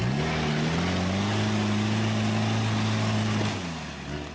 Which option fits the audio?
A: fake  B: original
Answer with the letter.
B